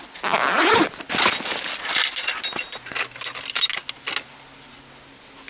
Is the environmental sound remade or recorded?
recorded